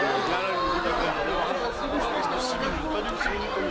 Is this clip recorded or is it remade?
recorded